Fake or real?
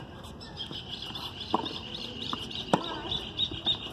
real